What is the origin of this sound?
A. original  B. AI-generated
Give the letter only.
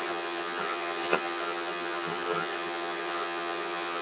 B